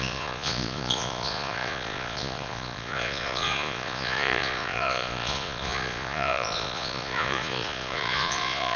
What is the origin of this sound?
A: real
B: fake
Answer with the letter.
B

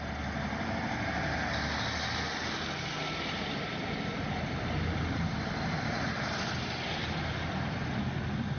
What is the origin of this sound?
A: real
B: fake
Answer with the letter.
A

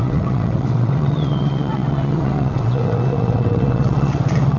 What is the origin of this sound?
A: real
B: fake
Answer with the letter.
B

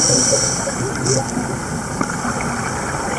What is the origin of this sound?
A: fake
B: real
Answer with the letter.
B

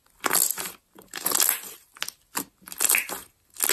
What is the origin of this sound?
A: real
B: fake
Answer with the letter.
A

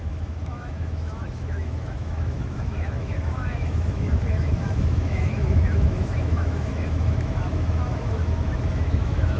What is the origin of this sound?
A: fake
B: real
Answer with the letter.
A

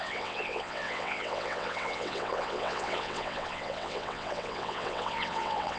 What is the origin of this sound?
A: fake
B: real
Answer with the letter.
A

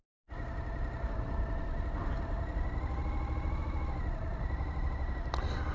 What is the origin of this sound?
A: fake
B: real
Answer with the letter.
B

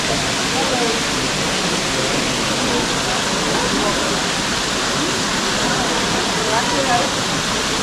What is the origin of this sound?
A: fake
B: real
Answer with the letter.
B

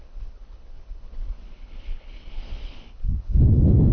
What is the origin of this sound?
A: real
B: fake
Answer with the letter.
B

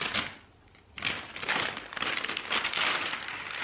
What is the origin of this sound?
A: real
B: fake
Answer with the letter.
A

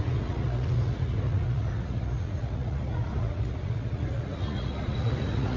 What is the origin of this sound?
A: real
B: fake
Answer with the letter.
B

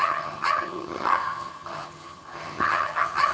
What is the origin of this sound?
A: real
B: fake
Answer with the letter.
B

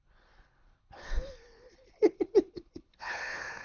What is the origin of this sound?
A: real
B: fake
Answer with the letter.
B